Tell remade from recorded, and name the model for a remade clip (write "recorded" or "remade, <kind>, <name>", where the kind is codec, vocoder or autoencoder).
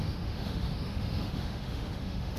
remade, autoencoder, DAC-VAE